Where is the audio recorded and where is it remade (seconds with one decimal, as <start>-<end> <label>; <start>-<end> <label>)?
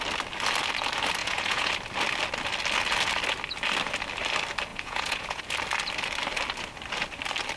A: 0.0-1.2 recorded; 1.2-1.7 remade; 1.7-4.7 recorded; 4.7-5.4 remade; 5.4-7.6 recorded